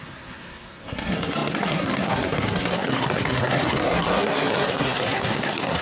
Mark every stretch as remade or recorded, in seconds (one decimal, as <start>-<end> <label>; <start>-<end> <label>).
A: 0.0-5.8 remade